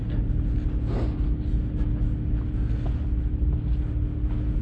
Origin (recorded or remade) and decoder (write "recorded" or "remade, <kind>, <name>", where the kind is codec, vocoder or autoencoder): recorded